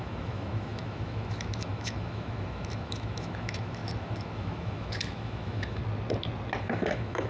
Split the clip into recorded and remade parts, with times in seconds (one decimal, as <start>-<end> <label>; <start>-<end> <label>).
0.0-5.8 remade; 5.8-6.6 recorded; 6.6-7.3 remade